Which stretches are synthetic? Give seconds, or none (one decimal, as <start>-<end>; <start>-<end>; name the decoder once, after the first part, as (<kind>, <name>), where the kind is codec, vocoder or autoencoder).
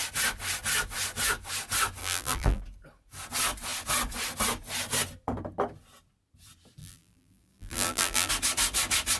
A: 2.0-2.6 (vocoder, BigVGAN v2); 6.8-8.3